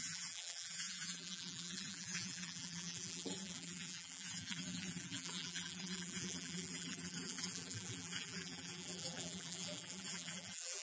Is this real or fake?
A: fake